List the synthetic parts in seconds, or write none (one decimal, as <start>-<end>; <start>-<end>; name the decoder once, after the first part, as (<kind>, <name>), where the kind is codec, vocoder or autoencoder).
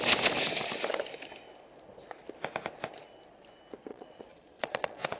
3.9-5.2 (vocoder, Vocos)